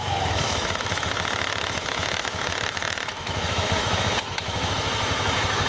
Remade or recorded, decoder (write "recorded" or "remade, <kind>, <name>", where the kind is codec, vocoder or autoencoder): remade, autoencoder, DAC-VAE